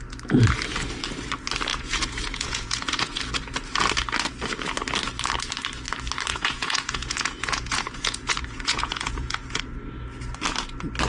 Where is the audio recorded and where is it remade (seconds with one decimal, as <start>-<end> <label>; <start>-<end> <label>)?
0.0-1.7 recorded; 1.7-3.2 remade; 3.2-6.3 recorded; 6.3-9.6 remade; 9.6-11.1 recorded